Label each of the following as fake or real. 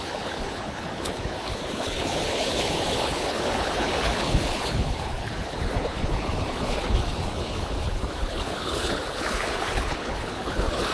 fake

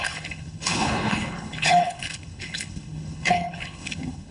fake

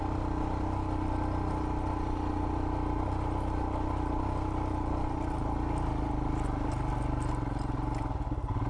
real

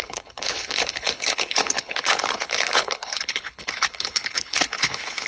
fake